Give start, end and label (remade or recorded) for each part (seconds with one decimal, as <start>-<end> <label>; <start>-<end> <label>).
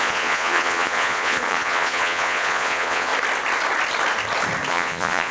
0.0-3.1 remade; 3.1-4.7 recorded; 4.7-5.3 remade